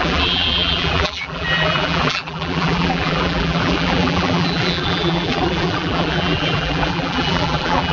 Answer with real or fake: fake